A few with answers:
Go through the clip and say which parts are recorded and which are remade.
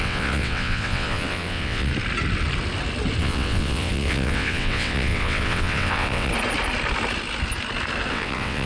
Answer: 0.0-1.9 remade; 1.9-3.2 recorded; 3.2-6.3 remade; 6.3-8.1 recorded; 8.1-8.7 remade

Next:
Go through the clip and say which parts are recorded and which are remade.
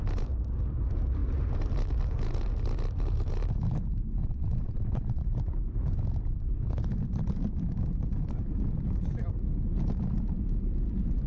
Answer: 0.0-4.2 recorded; 4.2-5.2 remade; 5.2-11.3 recorded